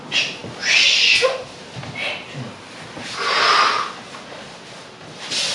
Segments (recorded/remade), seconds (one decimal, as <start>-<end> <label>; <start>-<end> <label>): 0.0-5.5 recorded